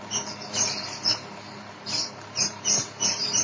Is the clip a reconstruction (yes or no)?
yes